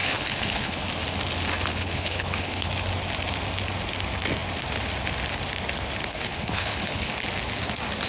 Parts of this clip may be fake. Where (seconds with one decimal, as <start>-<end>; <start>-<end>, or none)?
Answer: 0.0-0.8; 1.7-2.7; 6.1-7.1